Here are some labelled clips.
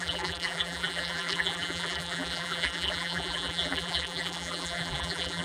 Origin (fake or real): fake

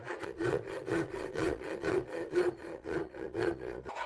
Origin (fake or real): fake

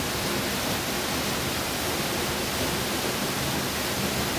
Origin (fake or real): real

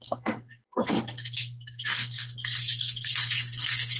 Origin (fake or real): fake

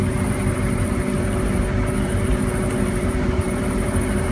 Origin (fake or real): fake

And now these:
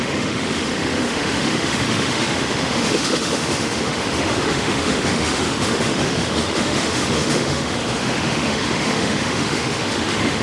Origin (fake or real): fake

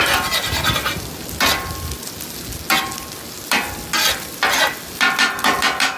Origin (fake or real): real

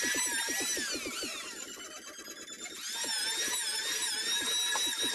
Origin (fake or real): real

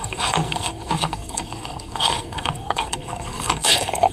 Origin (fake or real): fake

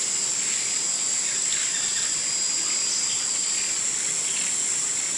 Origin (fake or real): real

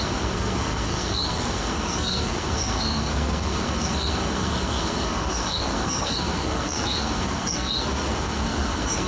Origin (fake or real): fake